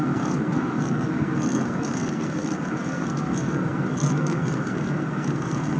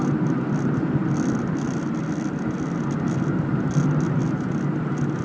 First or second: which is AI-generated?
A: first